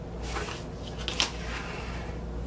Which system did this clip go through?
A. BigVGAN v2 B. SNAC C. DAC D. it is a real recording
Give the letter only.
D